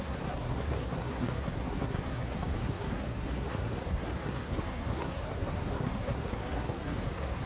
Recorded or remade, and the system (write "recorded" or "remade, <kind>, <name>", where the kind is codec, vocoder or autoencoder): remade, codec, SNAC